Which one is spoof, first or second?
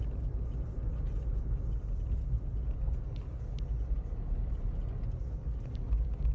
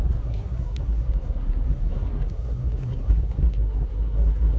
second